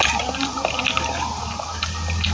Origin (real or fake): real